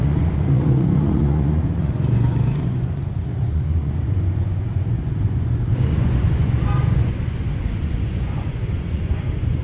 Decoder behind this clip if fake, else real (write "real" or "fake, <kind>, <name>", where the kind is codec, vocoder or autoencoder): fake, vocoder, Vocos